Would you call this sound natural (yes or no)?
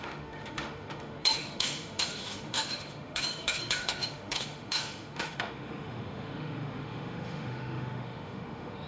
no